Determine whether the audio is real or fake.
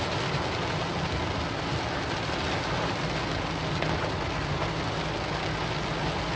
real